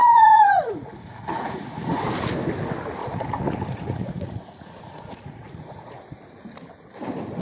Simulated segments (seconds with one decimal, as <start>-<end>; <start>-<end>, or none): 0.0-2.0; 3.0-6.0